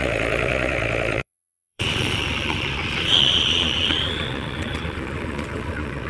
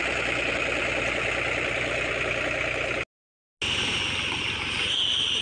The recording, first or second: second